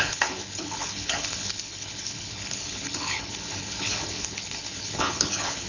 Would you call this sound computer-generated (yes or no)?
yes